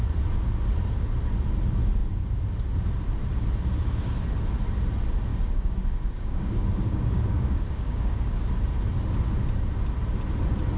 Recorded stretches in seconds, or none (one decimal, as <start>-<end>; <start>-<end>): 0.0-5.3; 8.5-10.8